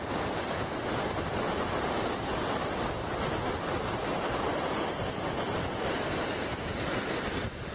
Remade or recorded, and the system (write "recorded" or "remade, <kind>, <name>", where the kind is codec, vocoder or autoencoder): recorded